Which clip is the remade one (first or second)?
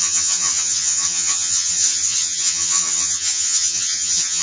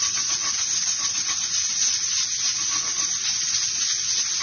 first